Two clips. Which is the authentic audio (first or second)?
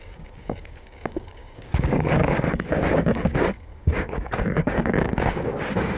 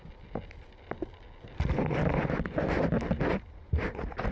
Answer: second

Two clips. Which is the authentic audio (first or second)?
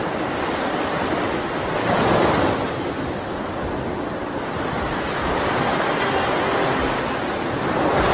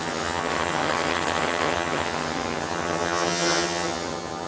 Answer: first